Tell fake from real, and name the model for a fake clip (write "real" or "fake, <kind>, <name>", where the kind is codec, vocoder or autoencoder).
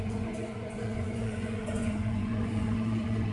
fake, vocoder, Vocos